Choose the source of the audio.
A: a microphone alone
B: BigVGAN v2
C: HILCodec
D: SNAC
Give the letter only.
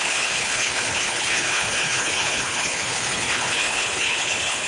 C